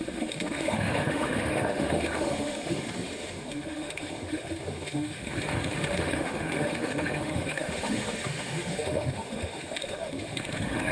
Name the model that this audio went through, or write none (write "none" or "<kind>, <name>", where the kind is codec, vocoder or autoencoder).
autoencoder, DAC-VAE